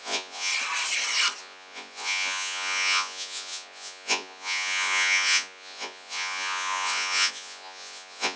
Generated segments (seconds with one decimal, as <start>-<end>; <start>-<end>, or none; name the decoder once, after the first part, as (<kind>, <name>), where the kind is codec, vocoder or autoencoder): 0.0-0.5 (vocoder, Vocos); 1.4-8.4